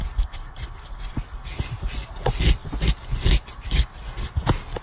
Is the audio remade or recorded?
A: recorded